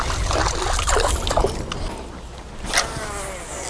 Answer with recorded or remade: recorded